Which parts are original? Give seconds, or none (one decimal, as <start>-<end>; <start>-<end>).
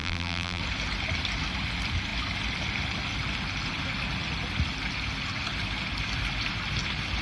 0.6-7.2